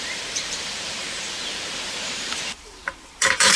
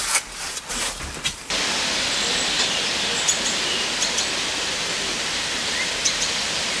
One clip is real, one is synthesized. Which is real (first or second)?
second